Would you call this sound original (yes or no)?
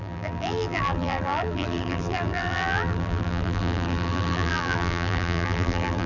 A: no